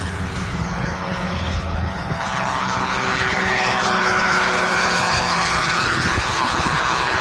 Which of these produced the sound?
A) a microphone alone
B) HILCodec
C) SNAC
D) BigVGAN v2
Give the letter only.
B